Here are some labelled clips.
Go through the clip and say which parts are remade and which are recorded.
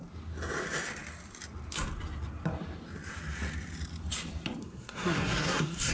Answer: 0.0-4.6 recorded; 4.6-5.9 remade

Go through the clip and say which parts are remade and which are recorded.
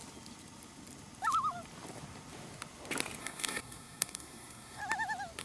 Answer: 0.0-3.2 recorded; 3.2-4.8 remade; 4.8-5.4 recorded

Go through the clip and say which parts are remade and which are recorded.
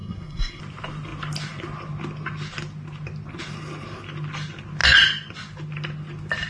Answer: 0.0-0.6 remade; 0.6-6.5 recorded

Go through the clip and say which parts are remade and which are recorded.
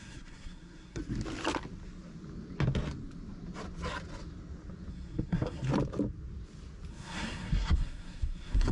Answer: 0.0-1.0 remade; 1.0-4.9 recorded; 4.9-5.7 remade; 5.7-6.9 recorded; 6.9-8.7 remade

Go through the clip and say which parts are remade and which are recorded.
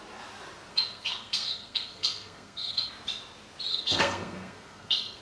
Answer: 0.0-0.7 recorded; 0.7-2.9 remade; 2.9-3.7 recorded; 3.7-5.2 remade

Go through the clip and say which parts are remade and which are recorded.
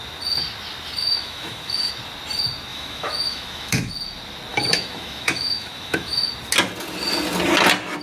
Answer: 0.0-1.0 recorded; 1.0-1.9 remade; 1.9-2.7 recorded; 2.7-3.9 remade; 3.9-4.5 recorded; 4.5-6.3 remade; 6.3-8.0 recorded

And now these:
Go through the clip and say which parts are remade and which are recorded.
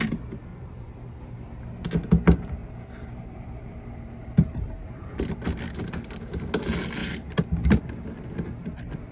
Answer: 0.0-0.5 recorded; 0.5-1.3 remade; 1.3-2.6 recorded; 2.6-5.3 remade; 5.3-9.1 recorded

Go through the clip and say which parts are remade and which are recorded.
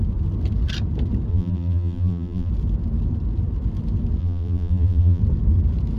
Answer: 0.0-1.3 recorded; 1.3-2.5 remade; 2.5-4.2 recorded; 4.2-5.2 remade; 5.2-6.0 recorded